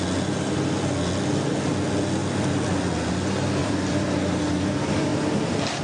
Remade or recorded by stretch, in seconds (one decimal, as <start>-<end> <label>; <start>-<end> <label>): 0.0-2.2 recorded; 2.2-3.1 remade; 3.1-3.6 recorded; 3.6-4.6 remade; 4.6-5.1 recorded; 5.1-5.8 remade

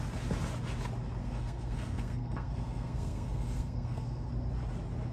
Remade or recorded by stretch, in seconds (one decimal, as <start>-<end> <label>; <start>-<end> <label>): 0.0-1.2 recorded; 1.2-4.3 remade; 4.3-5.1 recorded